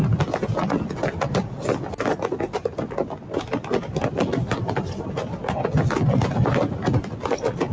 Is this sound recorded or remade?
recorded